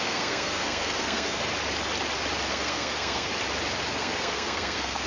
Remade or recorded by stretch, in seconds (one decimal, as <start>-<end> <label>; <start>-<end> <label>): 0.0-1.5 remade; 1.5-2.5 recorded; 2.5-3.3 remade; 3.3-3.9 recorded; 3.9-5.1 remade